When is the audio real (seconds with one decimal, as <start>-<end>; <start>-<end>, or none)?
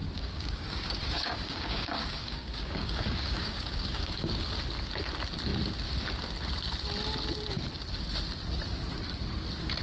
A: 4.6-9.8